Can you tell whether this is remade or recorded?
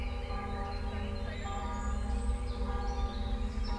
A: recorded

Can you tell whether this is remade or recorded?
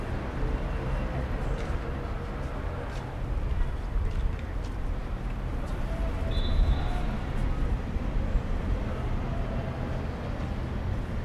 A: recorded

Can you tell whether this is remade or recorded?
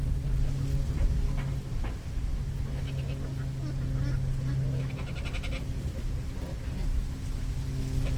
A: recorded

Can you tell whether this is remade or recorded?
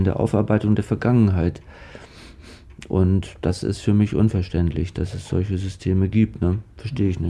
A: recorded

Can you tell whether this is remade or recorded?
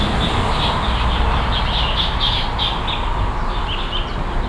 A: recorded